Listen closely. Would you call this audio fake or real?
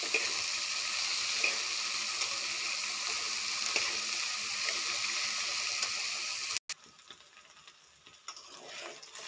real